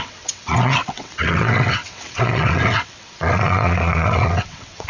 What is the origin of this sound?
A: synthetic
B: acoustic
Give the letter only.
A